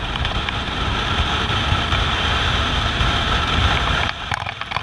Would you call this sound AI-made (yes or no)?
yes